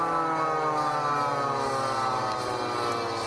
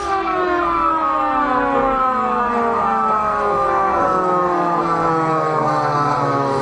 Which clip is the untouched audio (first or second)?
first